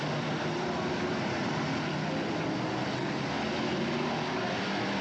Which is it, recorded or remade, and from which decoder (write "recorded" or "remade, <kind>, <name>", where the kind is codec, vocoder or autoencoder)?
recorded